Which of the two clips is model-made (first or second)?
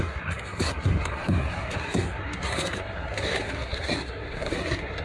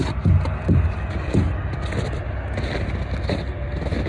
first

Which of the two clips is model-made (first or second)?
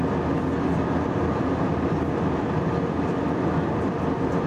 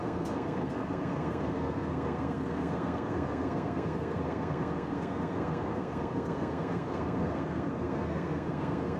second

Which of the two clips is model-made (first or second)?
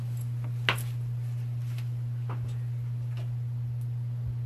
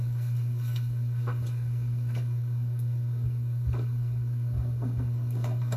second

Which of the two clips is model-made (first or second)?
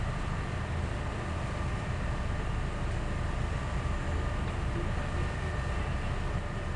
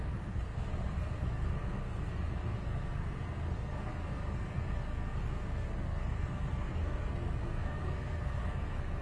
second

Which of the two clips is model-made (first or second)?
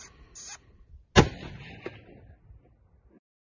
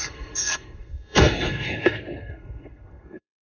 second